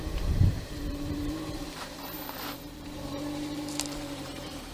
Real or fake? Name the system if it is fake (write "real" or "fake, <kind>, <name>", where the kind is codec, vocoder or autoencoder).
fake, vocoder, BigVGAN v2